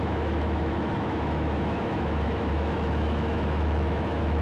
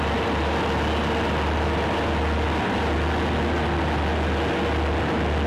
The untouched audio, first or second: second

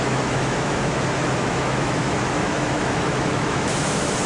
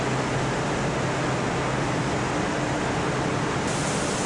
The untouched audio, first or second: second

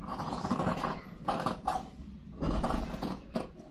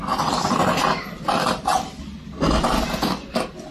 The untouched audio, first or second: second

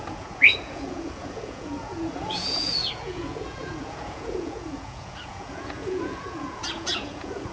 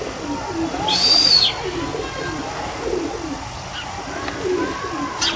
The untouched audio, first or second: second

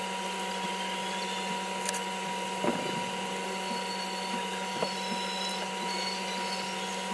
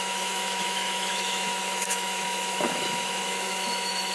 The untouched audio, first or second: first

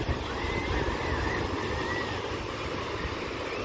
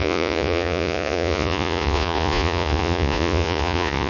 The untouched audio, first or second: first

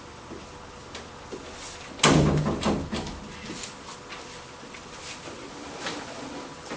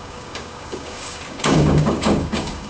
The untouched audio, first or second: first